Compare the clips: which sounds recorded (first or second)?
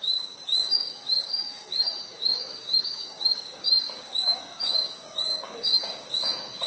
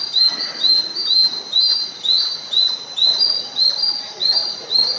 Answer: second